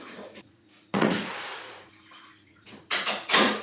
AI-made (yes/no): yes